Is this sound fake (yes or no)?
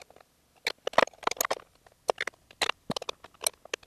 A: no